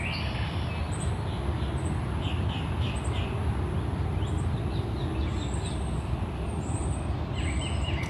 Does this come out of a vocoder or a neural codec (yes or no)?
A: no